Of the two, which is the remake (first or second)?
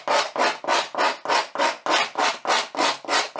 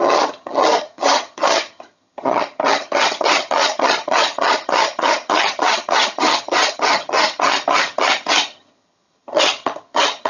second